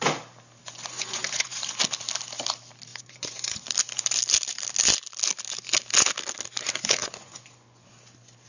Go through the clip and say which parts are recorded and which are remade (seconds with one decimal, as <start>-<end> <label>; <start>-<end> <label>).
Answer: 0.0-0.6 recorded; 0.6-1.6 remade; 1.6-2.9 recorded; 2.9-3.6 remade; 3.6-7.0 recorded; 7.0-7.9 remade; 7.9-8.5 recorded